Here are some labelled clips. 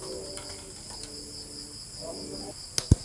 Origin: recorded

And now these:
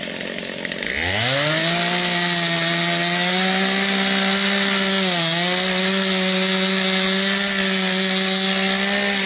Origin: recorded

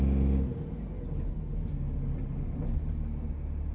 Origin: recorded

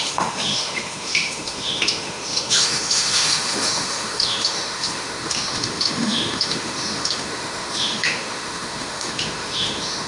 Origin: remade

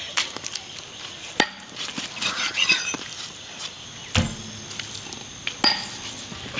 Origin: recorded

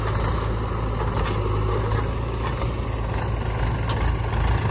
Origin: recorded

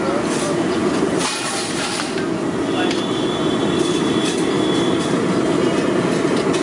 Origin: recorded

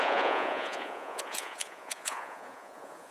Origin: remade